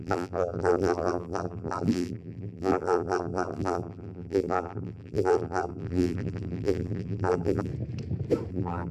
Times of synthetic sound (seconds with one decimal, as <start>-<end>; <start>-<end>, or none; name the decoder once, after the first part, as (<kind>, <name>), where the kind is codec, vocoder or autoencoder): 0.0-7.7 (vocoder, BigVGAN v2); 8.5-8.9